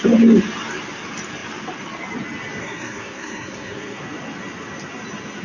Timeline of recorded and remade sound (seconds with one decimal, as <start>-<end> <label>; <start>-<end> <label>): 0.0-2.6 recorded; 2.6-4.0 remade; 4.0-5.4 recorded